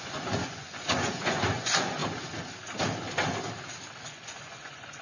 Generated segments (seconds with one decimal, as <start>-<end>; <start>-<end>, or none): 0.0-2.0; 4.0-5.0